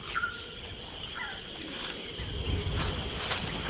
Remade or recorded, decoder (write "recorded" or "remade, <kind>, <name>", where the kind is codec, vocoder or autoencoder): recorded